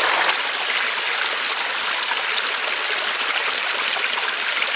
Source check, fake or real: real